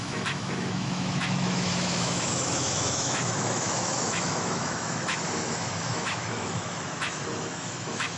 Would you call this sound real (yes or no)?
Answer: no